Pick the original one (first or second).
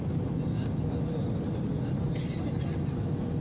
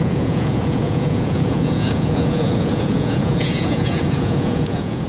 first